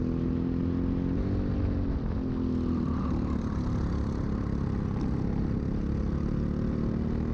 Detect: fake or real real